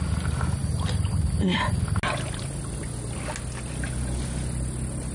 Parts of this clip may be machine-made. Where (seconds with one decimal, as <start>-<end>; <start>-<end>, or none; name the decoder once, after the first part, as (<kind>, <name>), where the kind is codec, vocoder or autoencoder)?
none